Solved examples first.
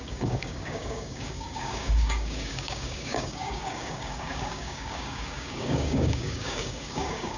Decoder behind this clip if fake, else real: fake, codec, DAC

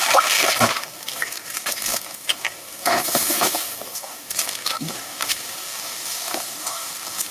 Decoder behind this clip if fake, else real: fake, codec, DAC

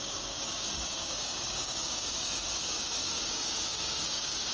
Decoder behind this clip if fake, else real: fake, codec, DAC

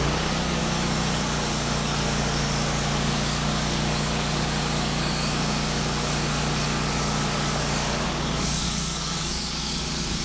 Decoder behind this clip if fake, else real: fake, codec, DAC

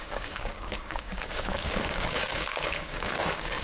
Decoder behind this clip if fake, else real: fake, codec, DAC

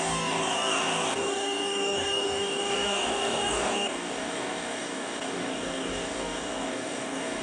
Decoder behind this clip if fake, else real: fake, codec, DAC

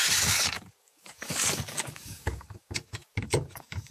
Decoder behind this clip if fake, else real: fake, codec, DAC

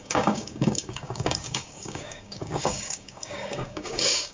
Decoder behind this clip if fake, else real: fake, codec, DAC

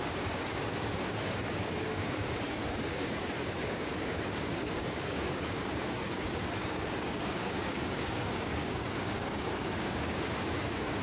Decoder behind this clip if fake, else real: fake, codec, DAC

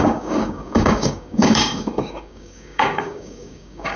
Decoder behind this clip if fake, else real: fake, codec, DAC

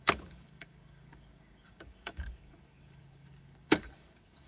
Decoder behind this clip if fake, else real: fake, codec, DAC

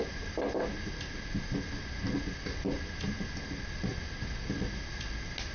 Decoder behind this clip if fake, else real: real